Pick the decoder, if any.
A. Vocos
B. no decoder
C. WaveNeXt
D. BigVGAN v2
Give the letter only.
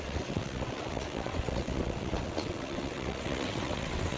C